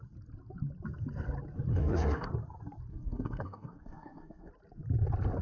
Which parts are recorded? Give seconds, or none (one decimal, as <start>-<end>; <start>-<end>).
0.0-1.7; 2.3-2.9; 4.5-5.4